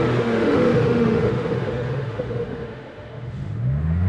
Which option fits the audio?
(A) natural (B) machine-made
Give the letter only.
B